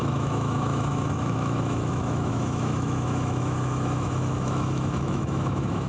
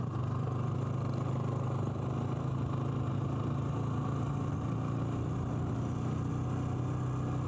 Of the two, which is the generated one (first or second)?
first